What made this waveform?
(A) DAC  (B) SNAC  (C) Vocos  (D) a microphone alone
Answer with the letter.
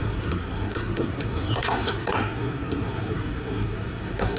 B